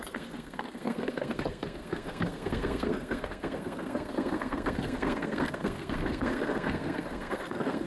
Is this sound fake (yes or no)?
yes